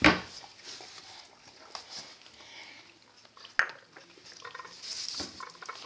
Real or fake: real